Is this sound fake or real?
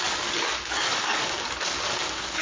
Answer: fake